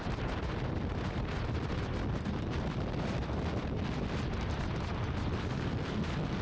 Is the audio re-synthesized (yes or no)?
yes